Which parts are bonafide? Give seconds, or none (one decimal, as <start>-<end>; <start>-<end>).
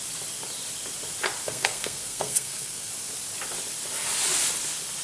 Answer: 0.0-1.4; 2.9-5.0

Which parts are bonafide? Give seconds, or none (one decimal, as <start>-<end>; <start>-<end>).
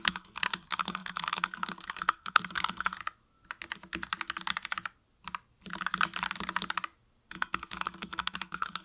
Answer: 3.0-7.3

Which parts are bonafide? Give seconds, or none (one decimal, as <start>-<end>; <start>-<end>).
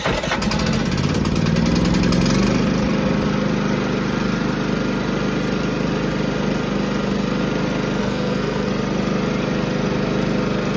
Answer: 0.0-8.0; 8.7-10.8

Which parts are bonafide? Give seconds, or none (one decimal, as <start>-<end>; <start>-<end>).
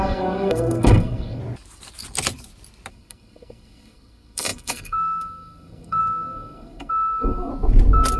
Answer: 1.4-2.9; 7.5-8.2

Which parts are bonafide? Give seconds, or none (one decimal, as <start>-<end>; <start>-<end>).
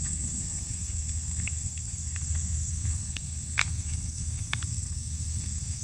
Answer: none